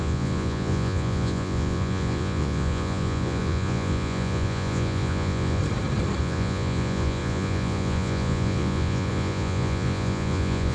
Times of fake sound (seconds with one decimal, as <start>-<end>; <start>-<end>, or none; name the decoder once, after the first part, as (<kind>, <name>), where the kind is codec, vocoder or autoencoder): 0.0-5.6 (vocoder, Vocos); 6.2-10.7